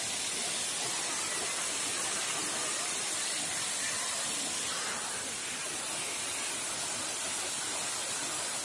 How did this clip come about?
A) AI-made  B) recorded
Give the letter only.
B